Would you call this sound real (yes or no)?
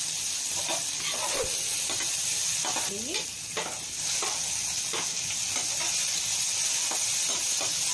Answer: yes